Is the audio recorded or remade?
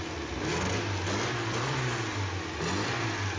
recorded